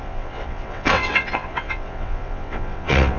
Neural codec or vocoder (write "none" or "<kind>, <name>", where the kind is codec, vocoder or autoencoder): vocoder, WaveNeXt